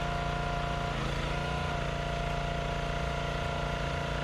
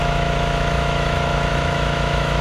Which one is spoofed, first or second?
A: second